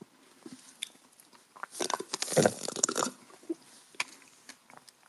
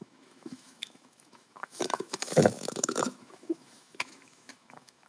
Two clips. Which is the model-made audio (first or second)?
second